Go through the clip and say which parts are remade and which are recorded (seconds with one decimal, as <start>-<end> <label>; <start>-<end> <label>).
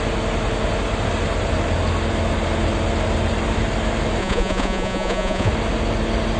0.0-4.2 recorded; 4.2-5.5 remade; 5.5-6.4 recorded